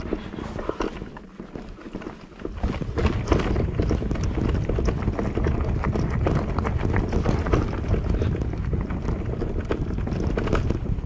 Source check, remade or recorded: recorded